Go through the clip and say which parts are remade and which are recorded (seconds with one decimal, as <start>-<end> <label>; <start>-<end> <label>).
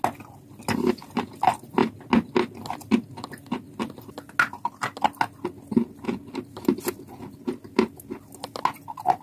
0.0-9.2 recorded